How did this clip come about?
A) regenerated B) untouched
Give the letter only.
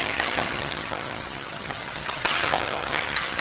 A